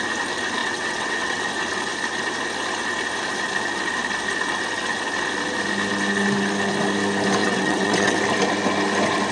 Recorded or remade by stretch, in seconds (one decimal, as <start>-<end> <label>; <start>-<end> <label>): 0.0-0.6 recorded; 0.6-1.4 remade; 1.4-7.4 recorded; 7.4-8.2 remade; 8.2-9.3 recorded